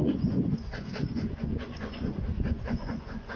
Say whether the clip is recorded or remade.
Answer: remade